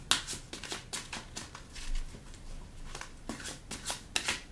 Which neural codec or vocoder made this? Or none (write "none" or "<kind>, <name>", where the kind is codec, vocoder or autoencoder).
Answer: none